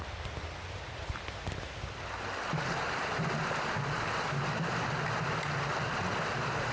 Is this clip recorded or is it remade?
remade